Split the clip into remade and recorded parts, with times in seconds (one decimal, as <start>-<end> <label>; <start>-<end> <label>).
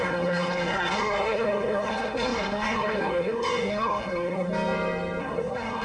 0.0-4.5 remade; 4.5-5.2 recorded; 5.2-5.8 remade